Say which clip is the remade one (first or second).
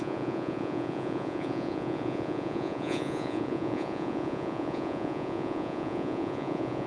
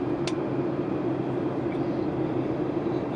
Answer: first